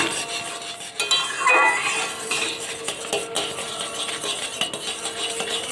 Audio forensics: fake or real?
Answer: real